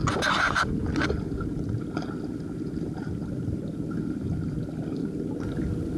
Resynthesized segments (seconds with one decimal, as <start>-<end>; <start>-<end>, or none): none